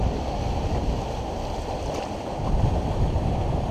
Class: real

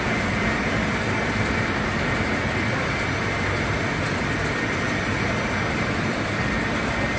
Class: fake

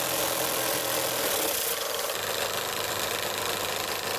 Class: fake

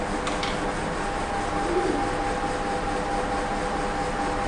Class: real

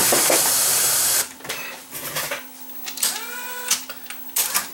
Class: fake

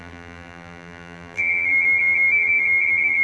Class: fake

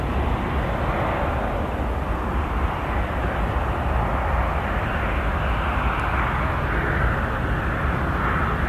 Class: real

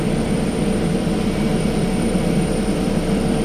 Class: fake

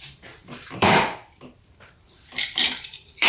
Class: fake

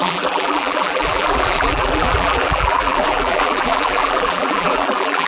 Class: fake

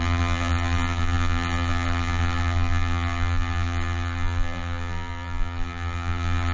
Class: fake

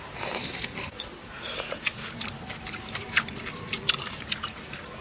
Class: fake